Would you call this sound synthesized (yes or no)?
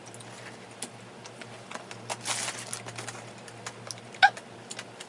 no